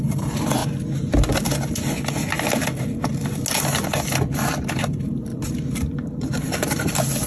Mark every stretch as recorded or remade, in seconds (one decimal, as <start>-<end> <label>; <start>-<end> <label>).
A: 0.0-0.6 remade; 0.6-4.7 recorded; 4.7-7.3 remade